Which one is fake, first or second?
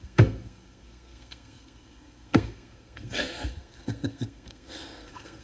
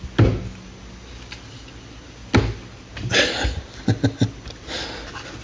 first